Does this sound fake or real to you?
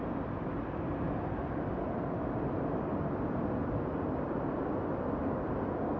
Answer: real